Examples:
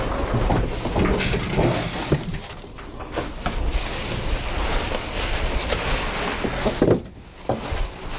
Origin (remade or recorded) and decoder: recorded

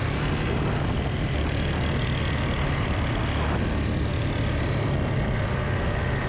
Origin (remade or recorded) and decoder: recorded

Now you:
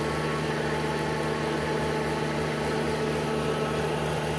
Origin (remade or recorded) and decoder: recorded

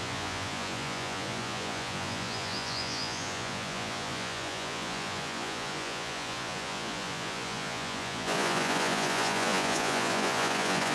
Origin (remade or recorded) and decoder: remade, vocoder, Vocos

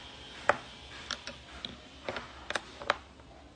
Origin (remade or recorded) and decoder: recorded